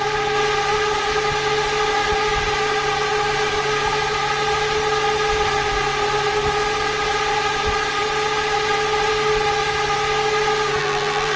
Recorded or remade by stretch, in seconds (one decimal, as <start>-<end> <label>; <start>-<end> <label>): 0.0-10.8 recorded; 10.8-11.4 remade